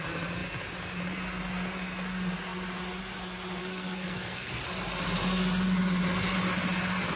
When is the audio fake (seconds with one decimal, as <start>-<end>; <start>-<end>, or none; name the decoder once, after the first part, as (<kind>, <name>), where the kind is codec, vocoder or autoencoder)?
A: 3.6-4.6 (codec, SNAC)